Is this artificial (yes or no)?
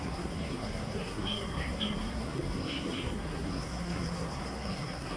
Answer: yes